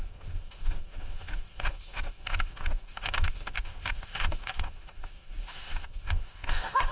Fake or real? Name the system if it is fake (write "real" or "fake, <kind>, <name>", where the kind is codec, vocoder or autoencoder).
fake, autoencoder, DAC-VAE